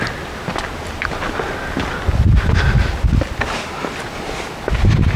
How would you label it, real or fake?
real